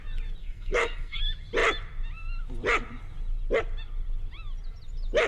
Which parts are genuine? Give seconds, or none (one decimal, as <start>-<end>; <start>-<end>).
0.0-0.4; 1.2-5.3